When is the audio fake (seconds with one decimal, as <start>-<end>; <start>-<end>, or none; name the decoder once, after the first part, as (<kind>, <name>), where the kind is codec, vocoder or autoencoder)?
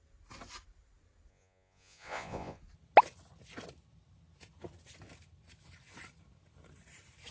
1.3-2.6 (vocoder, Vocos)